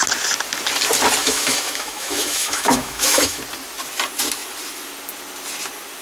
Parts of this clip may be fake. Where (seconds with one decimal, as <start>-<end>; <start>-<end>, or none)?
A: 1.2-3.4